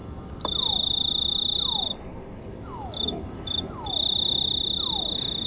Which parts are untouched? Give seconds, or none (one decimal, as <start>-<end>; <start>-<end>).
0.0-5.5